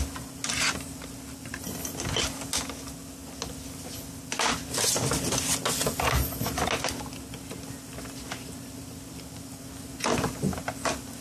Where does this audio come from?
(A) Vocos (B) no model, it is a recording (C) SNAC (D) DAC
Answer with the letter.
B